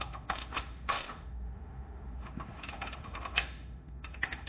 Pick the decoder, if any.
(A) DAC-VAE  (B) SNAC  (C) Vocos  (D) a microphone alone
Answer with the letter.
A